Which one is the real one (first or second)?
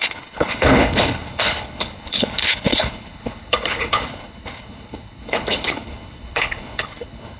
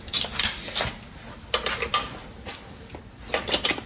second